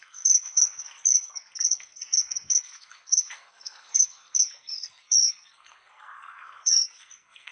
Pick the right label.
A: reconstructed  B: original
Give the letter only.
A